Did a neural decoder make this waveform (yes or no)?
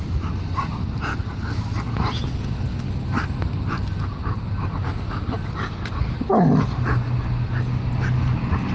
no